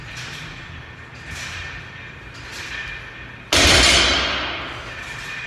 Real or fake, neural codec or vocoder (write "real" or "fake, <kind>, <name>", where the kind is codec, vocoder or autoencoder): real